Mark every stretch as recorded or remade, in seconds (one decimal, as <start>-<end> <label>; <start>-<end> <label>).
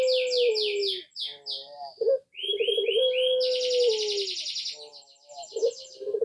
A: 0.0-4.9 recorded; 4.9-6.2 remade